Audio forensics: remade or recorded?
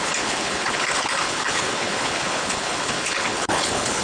remade